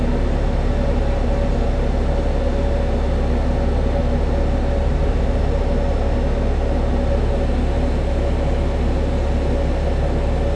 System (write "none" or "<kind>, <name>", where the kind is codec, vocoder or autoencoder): none